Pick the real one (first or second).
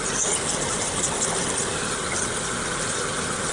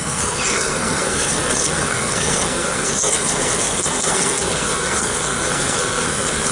first